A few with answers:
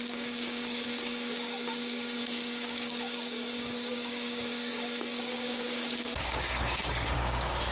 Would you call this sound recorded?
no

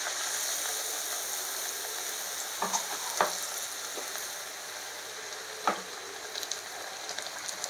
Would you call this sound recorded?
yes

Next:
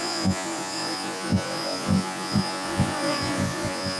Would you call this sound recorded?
no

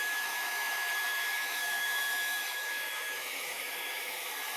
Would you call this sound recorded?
no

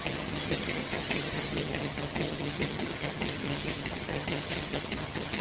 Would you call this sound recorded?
no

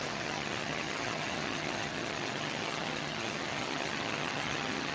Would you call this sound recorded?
no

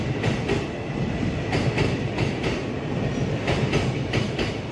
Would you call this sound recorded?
yes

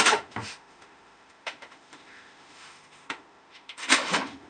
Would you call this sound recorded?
no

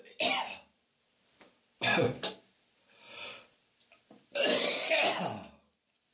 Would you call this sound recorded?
no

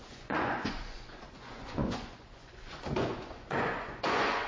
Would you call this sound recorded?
no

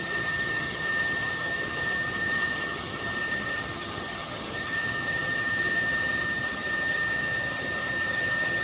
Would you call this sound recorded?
no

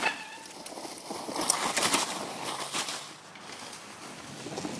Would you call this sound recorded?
yes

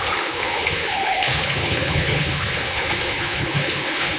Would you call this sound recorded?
no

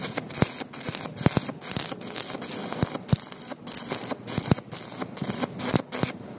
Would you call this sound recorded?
yes